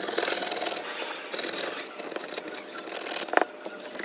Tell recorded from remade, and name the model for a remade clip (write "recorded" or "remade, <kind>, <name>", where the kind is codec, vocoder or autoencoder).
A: recorded